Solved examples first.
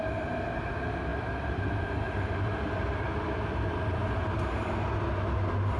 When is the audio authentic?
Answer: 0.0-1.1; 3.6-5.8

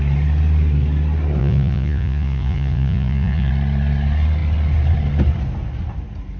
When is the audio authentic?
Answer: 0.0-1.4; 3.5-6.4

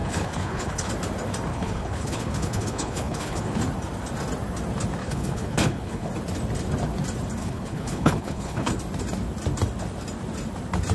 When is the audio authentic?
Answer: 0.9-1.5; 3.6-5.0; 6.1-7.4; 8.7-10.9

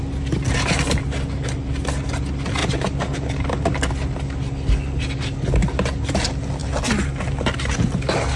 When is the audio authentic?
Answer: 0.0-8.4

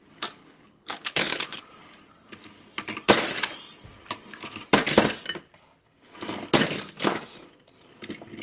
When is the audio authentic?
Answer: 0.0-0.4; 1.6-8.4

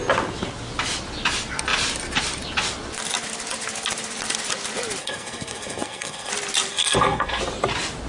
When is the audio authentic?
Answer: 0.0-5.0; 6.3-6.7; 7.4-8.1